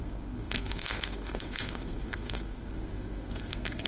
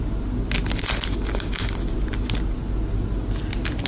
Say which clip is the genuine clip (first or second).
second